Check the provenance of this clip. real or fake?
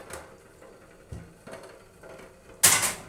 real